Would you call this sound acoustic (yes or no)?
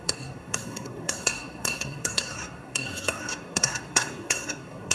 no